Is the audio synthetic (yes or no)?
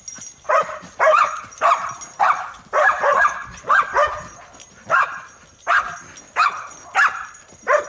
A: no